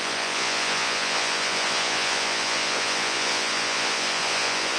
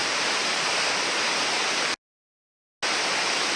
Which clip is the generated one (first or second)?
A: first